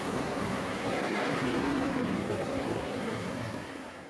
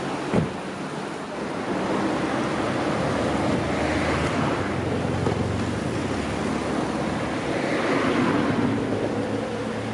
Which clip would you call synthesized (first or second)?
first